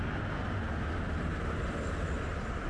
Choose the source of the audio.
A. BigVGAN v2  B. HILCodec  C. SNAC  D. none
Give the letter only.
D